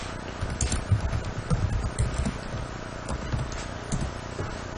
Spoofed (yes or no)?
no